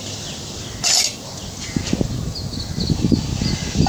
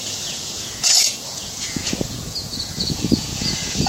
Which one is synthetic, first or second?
second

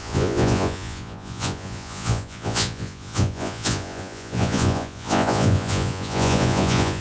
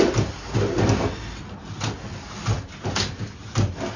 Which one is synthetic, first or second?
first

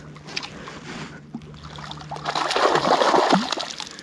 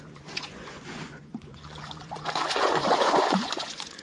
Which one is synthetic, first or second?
second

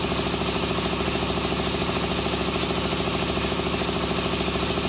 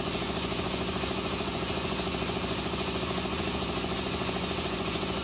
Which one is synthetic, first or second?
second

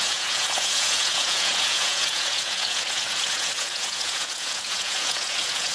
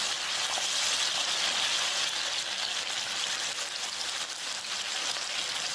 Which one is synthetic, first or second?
first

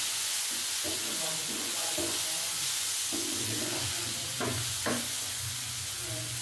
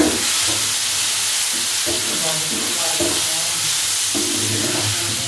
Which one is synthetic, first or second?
first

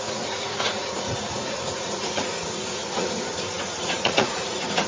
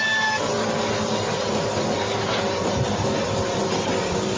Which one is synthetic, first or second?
first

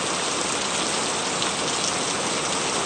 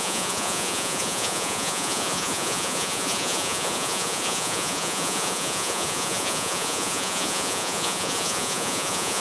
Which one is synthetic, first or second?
second